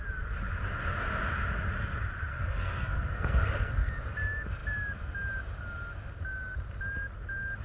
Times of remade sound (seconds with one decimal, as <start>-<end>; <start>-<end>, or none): 2.3-3.9